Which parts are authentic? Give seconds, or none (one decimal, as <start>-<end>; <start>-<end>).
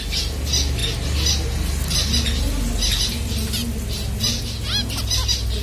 0.0-5.6